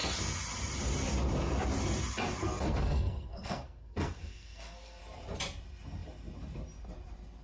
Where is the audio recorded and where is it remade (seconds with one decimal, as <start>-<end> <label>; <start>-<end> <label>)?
0.0-2.4 recorded; 2.4-5.0 remade; 5.0-7.4 recorded